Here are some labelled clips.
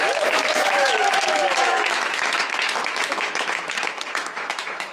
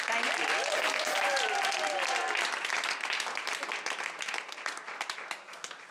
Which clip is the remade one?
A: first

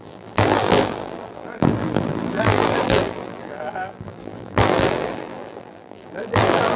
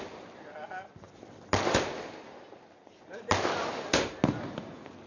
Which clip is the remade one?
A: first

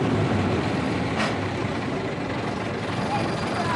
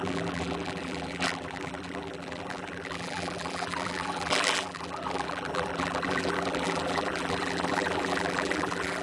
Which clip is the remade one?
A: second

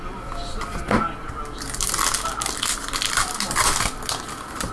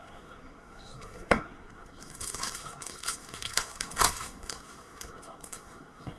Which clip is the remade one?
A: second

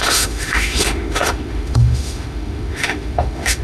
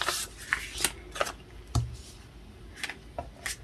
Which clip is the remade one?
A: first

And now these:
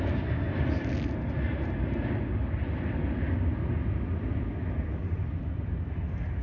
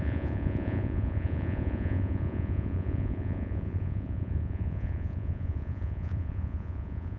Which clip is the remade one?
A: second